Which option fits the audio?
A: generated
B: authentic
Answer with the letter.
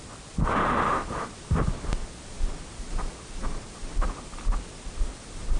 B